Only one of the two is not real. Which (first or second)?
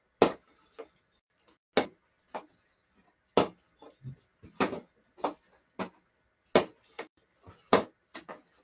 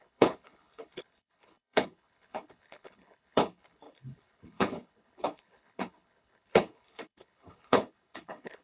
second